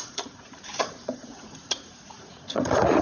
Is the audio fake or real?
fake